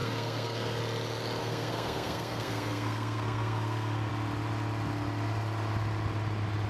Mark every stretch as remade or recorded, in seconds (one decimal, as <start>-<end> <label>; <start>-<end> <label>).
0.0-0.8 remade; 0.8-1.4 recorded; 1.4-4.1 remade; 4.1-6.7 recorded